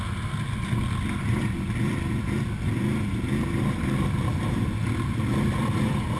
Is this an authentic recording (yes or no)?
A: yes